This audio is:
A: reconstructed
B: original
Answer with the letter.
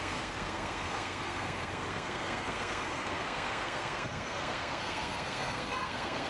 A